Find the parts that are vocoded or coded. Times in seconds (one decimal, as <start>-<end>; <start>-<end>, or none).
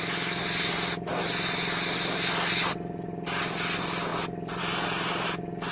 none